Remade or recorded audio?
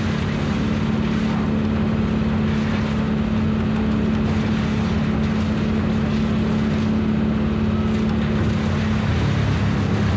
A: recorded